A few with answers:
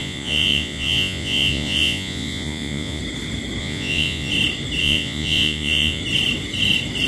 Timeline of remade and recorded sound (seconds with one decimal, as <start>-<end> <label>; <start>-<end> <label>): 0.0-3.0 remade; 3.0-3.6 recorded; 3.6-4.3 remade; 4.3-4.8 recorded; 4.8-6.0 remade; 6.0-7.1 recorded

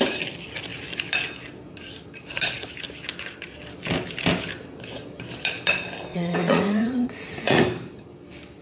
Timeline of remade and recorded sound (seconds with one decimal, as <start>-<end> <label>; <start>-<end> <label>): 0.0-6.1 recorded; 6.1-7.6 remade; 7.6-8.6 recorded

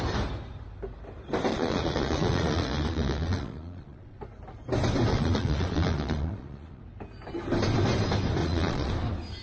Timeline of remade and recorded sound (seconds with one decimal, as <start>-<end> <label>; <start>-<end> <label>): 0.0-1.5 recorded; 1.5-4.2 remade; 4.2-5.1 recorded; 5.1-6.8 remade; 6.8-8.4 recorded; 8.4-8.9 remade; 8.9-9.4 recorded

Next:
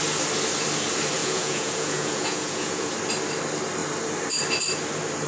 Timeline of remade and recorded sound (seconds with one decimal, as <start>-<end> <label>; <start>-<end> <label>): 0.0-1.2 recorded; 1.2-2.9 remade; 2.9-5.3 recorded

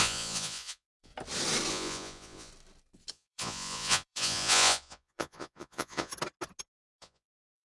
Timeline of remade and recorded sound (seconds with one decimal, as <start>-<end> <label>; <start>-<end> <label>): 0.0-1.1 remade; 1.1-1.7 recorded; 1.7-2.5 remade; 2.5-3.1 recorded; 3.1-6.1 remade; 6.1-6.7 recorded; 6.7-7.6 remade

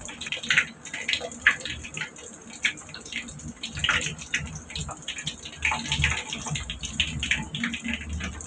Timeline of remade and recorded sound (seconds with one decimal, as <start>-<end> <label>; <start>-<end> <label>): 0.0-8.5 recorded

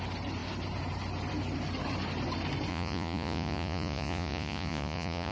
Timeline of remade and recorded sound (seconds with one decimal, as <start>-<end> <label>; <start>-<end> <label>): 0.0-2.7 recorded; 2.7-5.3 remade

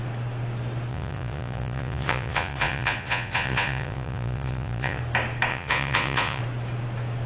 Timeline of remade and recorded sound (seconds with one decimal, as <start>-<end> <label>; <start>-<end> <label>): 0.0-0.9 recorded; 0.9-5.0 remade; 5.0-5.5 recorded; 5.5-6.4 remade; 6.4-7.3 recorded